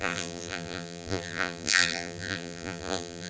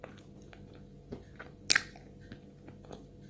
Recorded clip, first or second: second